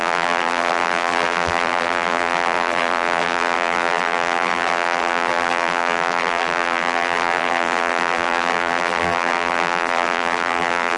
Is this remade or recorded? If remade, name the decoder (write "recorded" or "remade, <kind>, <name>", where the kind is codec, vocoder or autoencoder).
remade, vocoder, BigVGAN v2